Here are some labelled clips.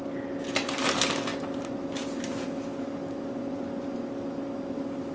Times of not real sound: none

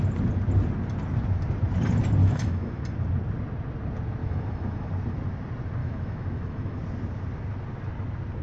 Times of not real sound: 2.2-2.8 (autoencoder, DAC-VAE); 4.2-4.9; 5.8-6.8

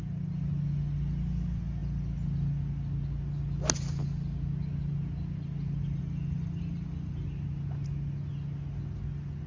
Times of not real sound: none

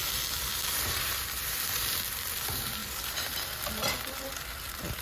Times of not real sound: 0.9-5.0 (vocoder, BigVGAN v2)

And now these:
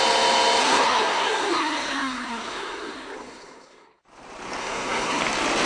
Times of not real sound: 0.6-4.0 (codec, SNAC); 4.6-5.2